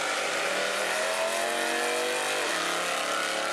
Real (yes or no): yes